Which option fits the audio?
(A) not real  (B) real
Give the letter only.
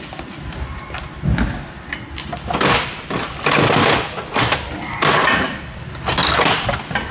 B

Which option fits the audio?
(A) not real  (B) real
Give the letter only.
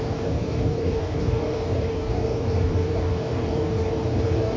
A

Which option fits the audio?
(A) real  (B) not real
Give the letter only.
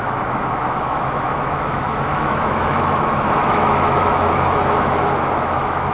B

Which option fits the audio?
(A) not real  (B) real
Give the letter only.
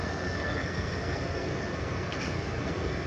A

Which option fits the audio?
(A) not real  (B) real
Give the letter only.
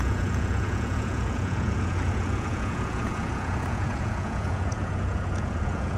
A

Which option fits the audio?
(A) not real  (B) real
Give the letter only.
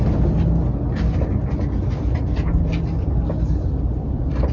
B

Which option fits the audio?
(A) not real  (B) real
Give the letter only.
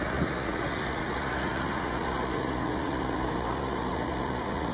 A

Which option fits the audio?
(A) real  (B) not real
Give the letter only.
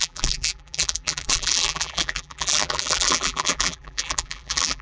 B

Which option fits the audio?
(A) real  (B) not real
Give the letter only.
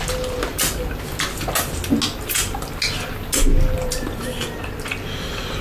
A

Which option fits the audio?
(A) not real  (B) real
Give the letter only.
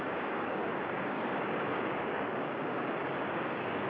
A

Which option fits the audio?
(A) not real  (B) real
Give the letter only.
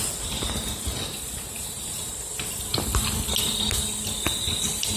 B